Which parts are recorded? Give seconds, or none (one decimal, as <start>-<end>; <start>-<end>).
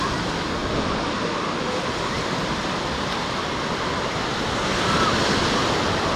0.0-6.2